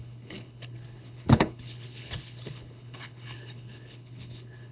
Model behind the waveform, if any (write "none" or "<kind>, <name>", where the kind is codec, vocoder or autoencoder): codec, HILCodec